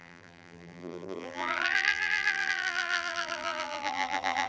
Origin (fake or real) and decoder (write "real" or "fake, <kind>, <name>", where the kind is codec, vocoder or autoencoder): fake, vocoder, BigVGAN v2